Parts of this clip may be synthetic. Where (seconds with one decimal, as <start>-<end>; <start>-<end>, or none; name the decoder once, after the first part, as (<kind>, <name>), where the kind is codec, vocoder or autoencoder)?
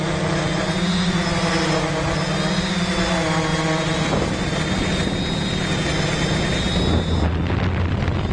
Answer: none